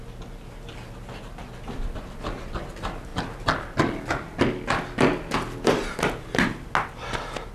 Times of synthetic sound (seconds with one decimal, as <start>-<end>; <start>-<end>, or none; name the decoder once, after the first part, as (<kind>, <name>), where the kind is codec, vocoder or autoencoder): none